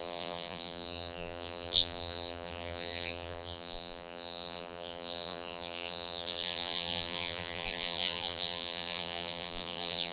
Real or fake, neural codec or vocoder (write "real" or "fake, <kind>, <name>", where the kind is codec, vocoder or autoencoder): fake, vocoder, BigVGAN v2